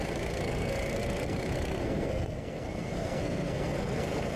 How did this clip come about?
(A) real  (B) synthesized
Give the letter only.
B